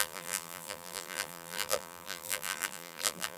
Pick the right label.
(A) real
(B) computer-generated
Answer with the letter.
B